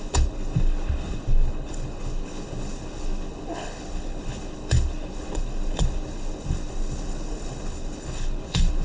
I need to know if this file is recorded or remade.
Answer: remade